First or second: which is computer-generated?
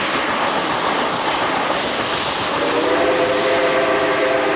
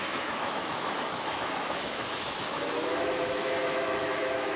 second